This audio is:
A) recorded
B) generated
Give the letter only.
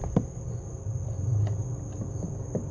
A